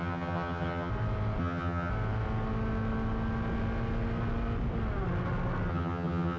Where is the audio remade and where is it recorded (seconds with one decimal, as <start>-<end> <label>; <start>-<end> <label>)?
0.0-0.9 remade; 0.9-1.4 recorded; 1.4-1.9 remade; 1.9-5.7 recorded; 5.7-6.4 remade